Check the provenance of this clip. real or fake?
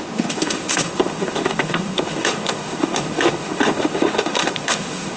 fake